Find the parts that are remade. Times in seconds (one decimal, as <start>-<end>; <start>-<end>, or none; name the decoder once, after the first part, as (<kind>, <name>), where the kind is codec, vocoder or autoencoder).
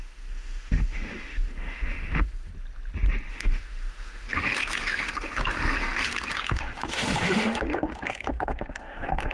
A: 0.0-2.5 (autoencoder, DAC-VAE); 3.3-9.3